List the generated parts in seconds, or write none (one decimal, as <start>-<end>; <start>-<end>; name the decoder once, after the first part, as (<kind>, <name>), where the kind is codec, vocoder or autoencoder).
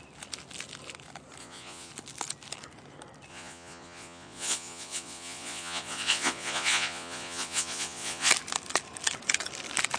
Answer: 1.4-1.9 (vocoder, Vocos); 3.3-8.3